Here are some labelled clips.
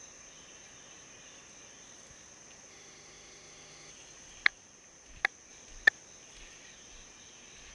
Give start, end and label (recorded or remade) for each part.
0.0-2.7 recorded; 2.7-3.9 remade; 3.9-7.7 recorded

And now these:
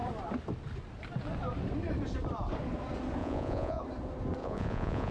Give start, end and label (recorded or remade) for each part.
0.0-3.2 recorded; 3.2-3.8 remade; 3.8-4.4 recorded; 4.4-5.1 remade

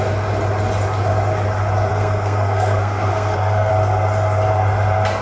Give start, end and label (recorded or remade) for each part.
0.0-1.9 recorded; 1.9-3.7 remade; 3.7-5.2 recorded

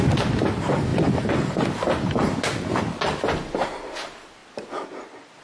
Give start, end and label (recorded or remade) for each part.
0.0-0.9 recorded; 0.9-3.0 remade; 3.0-5.4 recorded

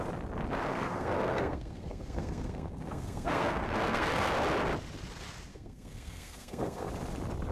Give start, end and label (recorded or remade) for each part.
0.0-0.7 recorded; 0.7-4.3 remade; 4.3-5.5 recorded; 5.5-6.9 remade; 6.9-7.5 recorded

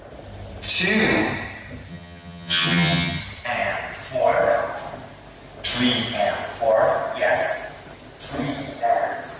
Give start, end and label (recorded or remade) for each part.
0.0-1.9 recorded; 1.9-3.2 remade; 3.2-9.4 recorded

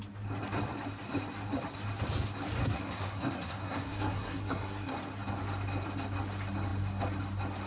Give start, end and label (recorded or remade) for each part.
0.0-2.6 recorded; 2.6-4.9 remade; 4.9-7.7 recorded

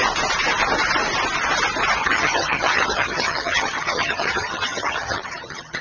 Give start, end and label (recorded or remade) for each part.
0.0-2.0 recorded; 2.0-5.8 remade